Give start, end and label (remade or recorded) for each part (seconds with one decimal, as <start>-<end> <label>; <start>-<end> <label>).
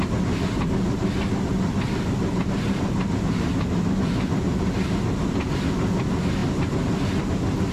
0.0-1.5 recorded; 1.5-4.7 remade; 4.7-7.7 recorded